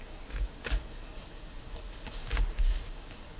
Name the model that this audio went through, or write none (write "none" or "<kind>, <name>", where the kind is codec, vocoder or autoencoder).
codec, DAC